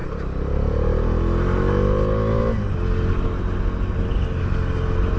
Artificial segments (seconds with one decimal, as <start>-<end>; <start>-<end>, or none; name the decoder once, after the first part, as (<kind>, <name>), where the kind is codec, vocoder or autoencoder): none